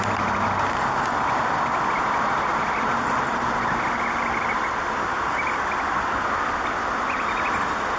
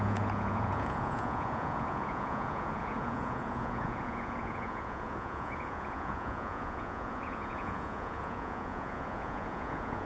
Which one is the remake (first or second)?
second